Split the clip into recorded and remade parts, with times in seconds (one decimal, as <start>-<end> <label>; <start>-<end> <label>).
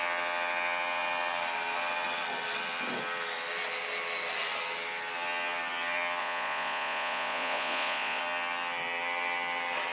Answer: 0.0-6.2 recorded; 6.2-8.2 remade; 8.2-9.9 recorded